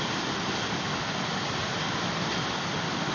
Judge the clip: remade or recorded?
recorded